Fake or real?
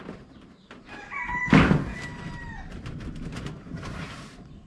real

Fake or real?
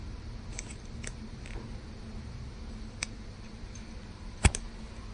real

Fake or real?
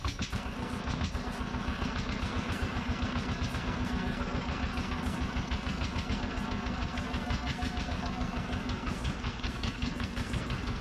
fake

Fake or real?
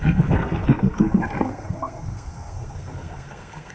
fake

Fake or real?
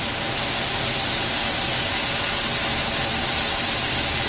real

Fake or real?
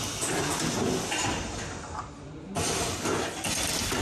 real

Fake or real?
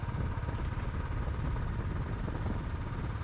real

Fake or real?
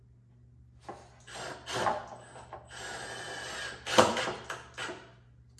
real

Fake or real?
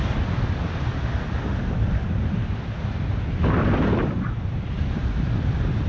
real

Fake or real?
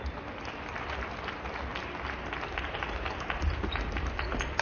real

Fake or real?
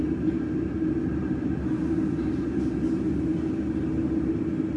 real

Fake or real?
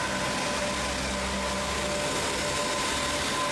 real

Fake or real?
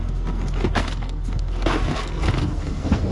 fake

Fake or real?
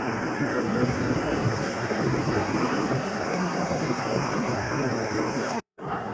fake